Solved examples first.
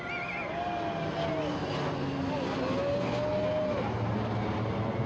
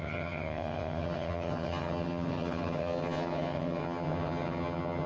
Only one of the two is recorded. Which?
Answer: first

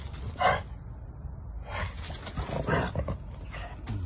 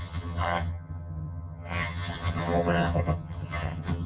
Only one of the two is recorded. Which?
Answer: first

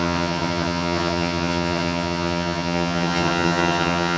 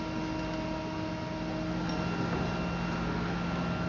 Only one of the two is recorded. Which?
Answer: second